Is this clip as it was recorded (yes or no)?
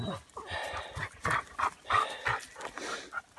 yes